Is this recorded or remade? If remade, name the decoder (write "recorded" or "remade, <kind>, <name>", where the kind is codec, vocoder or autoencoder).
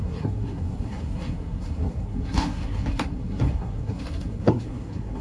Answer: remade, codec, SNAC